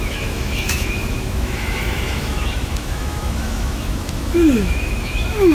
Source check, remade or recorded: remade